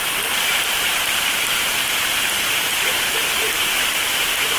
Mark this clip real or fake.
fake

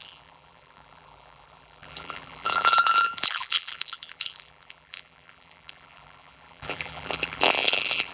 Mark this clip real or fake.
fake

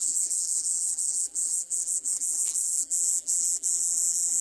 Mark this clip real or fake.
fake